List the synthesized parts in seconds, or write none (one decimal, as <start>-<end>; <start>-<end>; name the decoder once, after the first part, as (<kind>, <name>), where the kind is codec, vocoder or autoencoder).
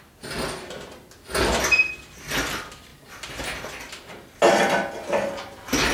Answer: none